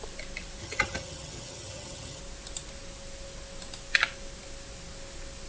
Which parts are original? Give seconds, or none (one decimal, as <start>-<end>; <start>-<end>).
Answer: 0.0-0.6; 2.2-5.5